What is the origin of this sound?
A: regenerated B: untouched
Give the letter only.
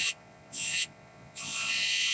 A